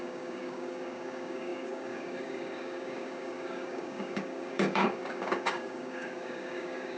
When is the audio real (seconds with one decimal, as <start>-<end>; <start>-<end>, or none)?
none